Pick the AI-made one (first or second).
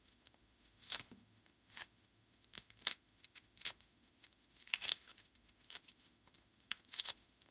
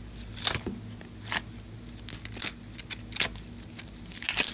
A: first